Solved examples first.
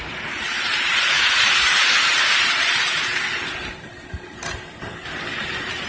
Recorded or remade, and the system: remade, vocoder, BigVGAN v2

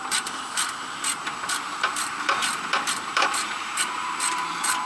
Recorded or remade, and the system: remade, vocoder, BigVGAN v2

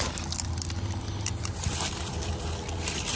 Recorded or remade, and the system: remade, vocoder, BigVGAN v2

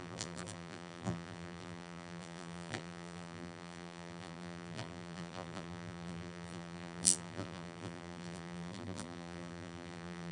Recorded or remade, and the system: remade, vocoder, BigVGAN v2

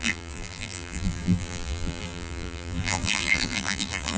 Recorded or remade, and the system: remade, vocoder, BigVGAN v2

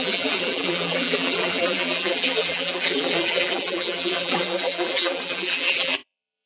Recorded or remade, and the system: remade, vocoder, BigVGAN v2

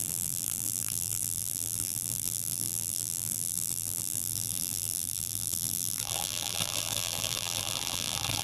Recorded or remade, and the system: remade, vocoder, BigVGAN v2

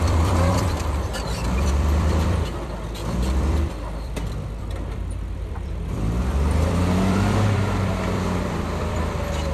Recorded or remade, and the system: remade, vocoder, BigVGAN v2